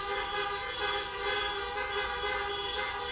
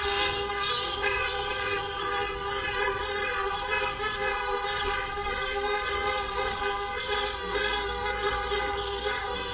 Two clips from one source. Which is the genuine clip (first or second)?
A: first